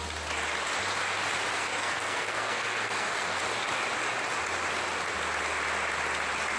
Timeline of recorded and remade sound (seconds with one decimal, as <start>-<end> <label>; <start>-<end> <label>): 0.0-1.5 recorded; 1.5-3.4 remade; 3.4-6.6 recorded

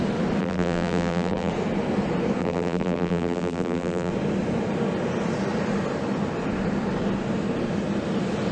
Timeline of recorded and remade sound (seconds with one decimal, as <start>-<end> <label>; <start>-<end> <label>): 0.0-0.4 recorded; 0.4-1.5 remade; 1.5-2.4 recorded; 2.4-4.1 remade; 4.1-8.5 recorded